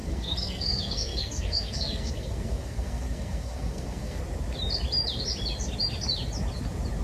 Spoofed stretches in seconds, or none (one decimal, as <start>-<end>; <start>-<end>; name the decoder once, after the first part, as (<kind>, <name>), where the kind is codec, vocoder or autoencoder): 0.0-4.2 (codec, SNAC)